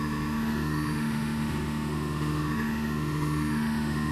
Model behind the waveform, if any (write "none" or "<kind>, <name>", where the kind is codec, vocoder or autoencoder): autoencoder, DAC-VAE